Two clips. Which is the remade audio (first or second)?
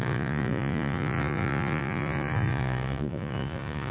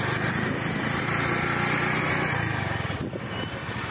first